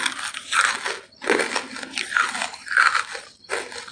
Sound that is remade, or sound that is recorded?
recorded